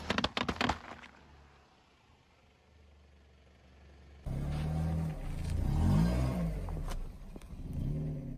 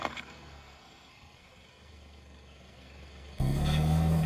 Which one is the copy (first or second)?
second